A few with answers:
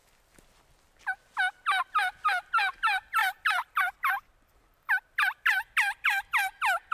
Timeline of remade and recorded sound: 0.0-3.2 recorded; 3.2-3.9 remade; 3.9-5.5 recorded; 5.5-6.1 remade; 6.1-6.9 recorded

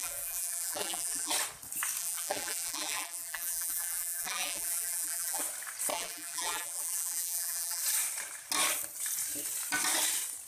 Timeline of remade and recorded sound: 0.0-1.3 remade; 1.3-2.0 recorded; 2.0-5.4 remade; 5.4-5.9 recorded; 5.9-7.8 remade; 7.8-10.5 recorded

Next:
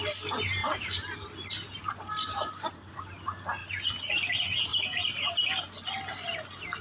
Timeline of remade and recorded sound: 0.0-0.6 recorded; 0.6-2.9 remade; 2.9-4.7 recorded; 4.7-5.3 remade; 5.3-6.8 recorded